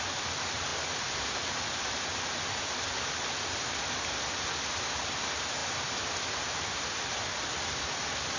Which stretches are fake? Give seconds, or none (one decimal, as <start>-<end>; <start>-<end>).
none